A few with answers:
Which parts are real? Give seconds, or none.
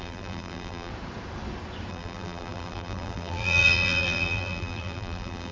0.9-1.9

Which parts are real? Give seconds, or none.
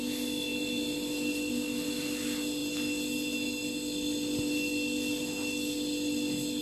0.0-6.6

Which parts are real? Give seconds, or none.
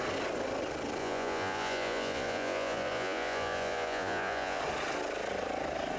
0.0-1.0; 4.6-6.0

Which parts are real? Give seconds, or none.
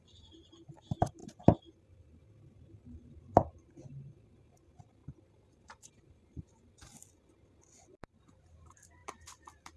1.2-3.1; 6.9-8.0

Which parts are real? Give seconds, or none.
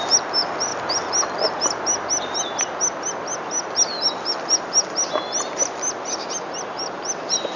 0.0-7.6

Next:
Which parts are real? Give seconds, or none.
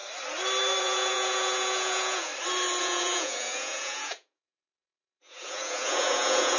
0.0-0.8; 2.3-2.8